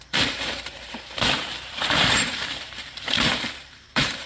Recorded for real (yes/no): no